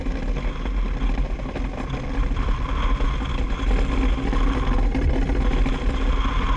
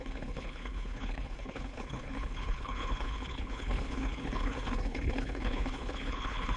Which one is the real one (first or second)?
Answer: first